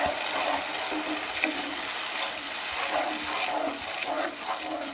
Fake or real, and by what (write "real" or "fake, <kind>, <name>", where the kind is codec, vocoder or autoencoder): real